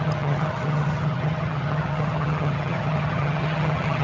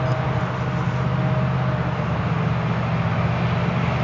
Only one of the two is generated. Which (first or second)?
first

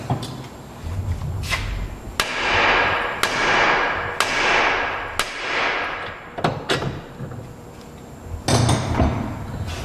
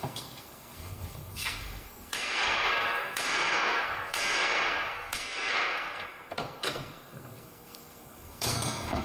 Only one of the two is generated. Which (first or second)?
second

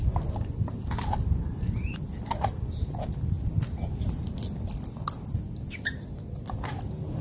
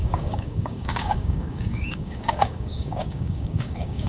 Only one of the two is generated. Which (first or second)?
second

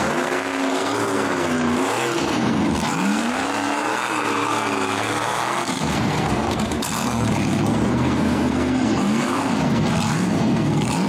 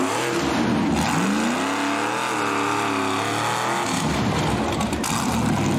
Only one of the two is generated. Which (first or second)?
first